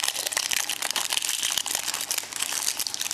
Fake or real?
fake